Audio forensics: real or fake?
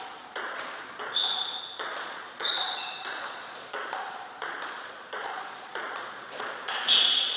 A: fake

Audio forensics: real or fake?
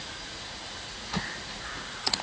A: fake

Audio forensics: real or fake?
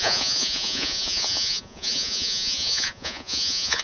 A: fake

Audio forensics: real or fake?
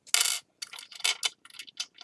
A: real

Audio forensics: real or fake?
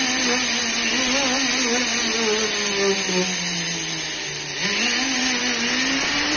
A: real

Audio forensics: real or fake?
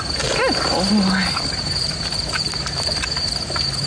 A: real